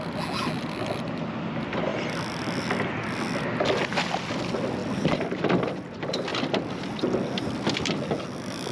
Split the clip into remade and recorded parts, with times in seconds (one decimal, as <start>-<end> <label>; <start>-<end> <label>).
0.0-1.9 recorded; 1.9-2.9 remade; 2.9-4.8 recorded; 4.8-5.8 remade; 5.8-6.3 recorded; 6.3-7.9 remade; 7.9-8.7 recorded